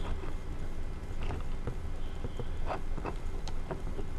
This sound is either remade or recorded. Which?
recorded